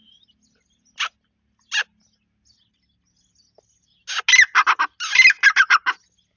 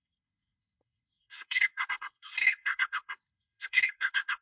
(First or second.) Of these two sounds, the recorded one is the first